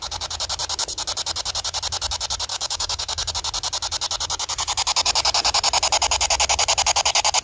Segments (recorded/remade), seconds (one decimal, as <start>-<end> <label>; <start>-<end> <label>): 0.0-2.5 recorded; 2.5-3.3 remade; 3.3-7.4 recorded